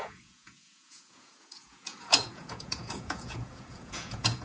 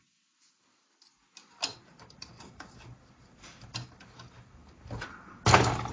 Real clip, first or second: second